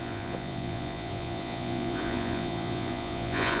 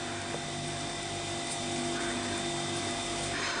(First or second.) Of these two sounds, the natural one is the second